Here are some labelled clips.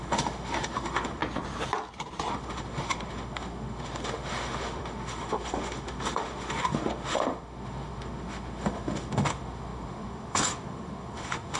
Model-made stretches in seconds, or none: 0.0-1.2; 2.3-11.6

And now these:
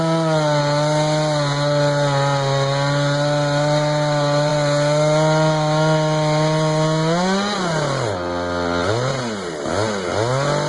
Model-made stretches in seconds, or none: none

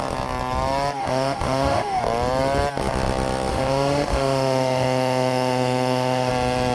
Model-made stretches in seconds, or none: 1.0-2.0; 3.5-6.3

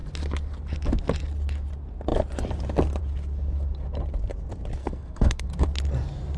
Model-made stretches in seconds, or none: 4.8-5.5

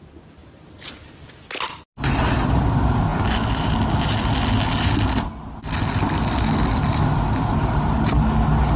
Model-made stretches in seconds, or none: none

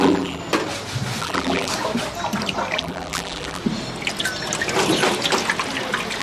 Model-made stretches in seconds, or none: 0.0-0.4; 1.2-1.7; 2.8-3.6

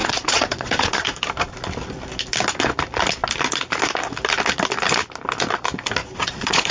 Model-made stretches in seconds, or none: 0.0-1.2; 6.0-6.7